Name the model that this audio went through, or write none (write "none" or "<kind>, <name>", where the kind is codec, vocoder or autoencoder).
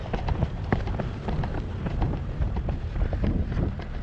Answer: vocoder, BigVGAN v2